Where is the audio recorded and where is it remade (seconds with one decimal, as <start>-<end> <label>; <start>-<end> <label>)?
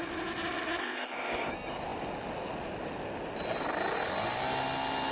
0.0-0.8 recorded; 0.8-1.5 remade; 1.5-5.1 recorded